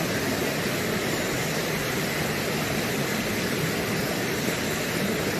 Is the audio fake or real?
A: real